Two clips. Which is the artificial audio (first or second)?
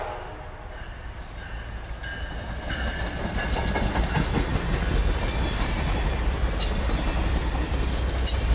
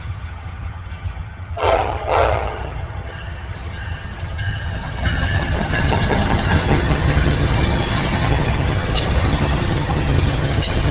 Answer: second